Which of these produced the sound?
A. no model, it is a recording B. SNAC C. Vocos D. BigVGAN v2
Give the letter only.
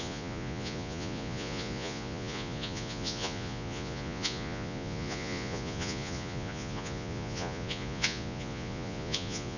C